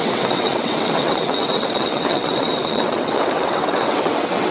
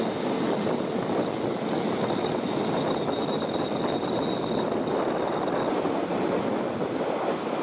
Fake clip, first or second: first